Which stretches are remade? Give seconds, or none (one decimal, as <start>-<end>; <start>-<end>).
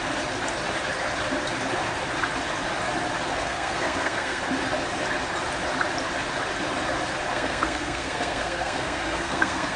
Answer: 3.3-4.4; 7.3-9.8